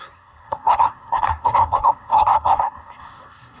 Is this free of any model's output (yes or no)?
no